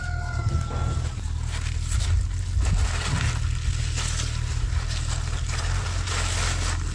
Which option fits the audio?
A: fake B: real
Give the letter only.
B